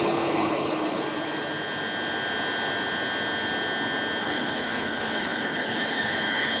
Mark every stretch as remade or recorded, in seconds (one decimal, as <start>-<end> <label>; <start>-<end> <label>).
0.0-1.0 remade; 1.0-4.2 recorded; 4.2-6.6 remade